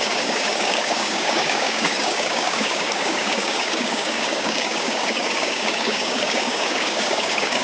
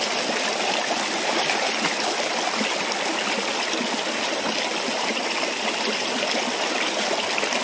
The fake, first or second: first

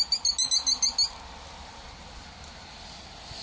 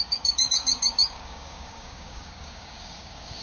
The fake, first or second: second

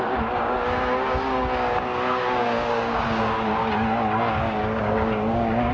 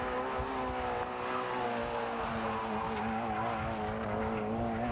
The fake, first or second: first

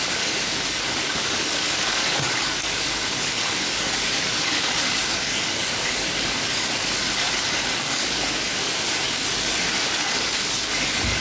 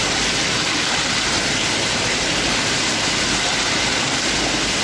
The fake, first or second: first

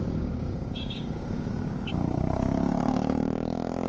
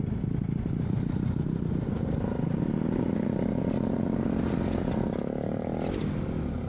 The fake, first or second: first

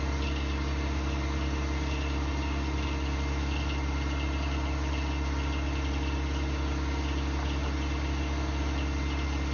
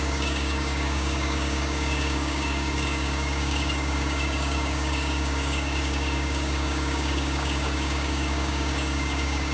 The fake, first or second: second